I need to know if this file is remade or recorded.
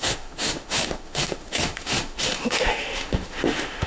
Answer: remade